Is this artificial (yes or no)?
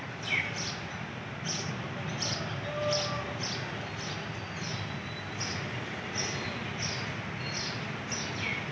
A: no